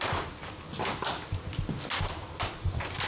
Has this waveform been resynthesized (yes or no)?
no